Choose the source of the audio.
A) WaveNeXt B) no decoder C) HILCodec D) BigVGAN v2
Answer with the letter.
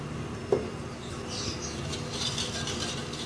B